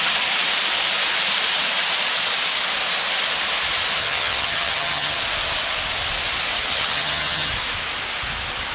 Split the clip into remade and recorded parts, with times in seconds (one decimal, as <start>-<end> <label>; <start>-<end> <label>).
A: 0.0-4.0 recorded; 4.0-5.2 remade; 5.2-6.7 recorded; 6.7-7.5 remade; 7.5-8.7 recorded